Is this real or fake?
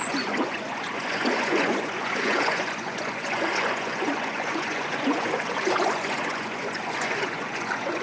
fake